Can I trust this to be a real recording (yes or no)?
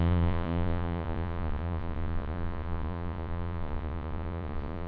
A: no